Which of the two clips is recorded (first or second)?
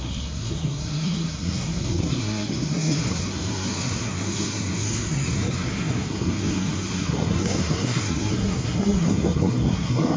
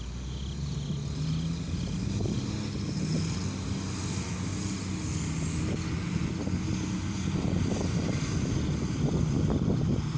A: second